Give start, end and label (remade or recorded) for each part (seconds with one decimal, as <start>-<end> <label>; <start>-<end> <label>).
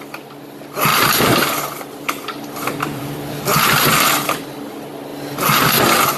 0.0-0.9 recorded; 0.9-4.6 remade; 4.6-6.2 recorded